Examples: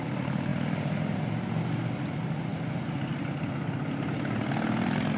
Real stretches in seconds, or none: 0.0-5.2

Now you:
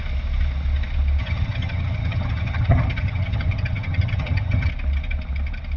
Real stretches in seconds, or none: 0.0-1.2; 4.7-5.8